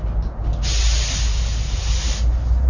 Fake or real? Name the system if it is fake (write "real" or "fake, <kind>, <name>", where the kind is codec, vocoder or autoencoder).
real